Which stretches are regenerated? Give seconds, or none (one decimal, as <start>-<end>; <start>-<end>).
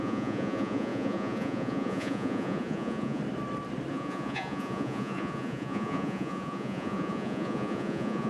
0.0-3.2; 3.9-8.3